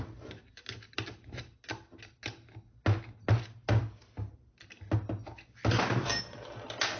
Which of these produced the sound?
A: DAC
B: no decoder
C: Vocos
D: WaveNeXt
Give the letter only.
B